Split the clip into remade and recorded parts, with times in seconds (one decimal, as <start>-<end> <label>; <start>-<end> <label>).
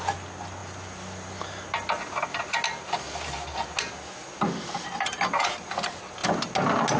0.0-7.0 recorded